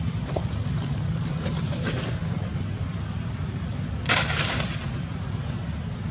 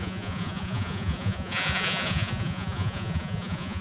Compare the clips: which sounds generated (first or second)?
second